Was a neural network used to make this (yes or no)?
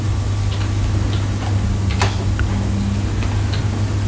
no